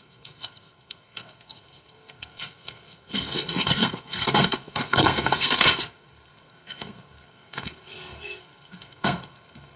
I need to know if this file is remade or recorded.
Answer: remade